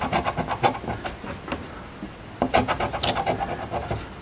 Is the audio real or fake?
real